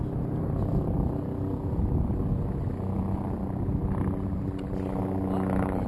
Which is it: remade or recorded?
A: recorded